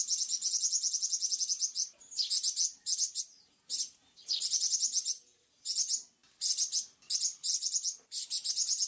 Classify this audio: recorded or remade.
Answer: recorded